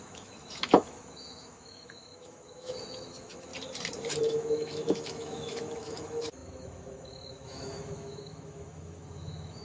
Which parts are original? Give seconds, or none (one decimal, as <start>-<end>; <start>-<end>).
3.5-4.2